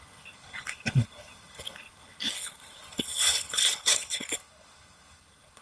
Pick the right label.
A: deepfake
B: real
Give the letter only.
A